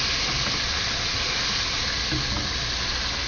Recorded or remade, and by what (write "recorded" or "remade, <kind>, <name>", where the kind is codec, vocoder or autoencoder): recorded